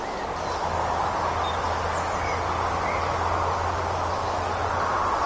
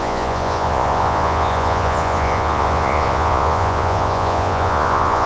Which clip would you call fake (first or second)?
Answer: second